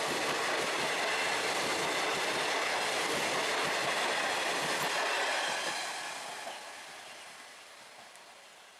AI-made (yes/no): no